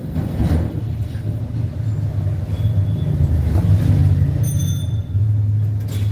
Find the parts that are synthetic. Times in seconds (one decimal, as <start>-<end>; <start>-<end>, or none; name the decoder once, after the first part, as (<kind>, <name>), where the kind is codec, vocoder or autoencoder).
0.0-1.4 (codec, SNAC)